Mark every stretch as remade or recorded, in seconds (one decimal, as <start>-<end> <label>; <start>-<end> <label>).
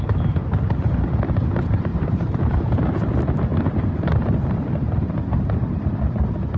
0.0-1.9 recorded; 1.9-3.1 remade; 3.1-3.5 recorded; 3.5-4.1 remade; 4.1-6.6 recorded